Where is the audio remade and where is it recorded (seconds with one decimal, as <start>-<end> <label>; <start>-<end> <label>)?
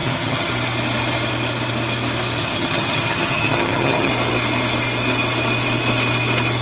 0.0-0.5 remade; 0.5-2.4 recorded; 2.4-4.1 remade; 4.1-6.6 recorded